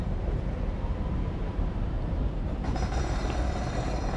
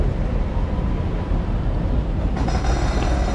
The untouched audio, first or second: second